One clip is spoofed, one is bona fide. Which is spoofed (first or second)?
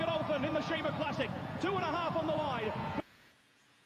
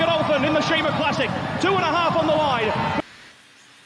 first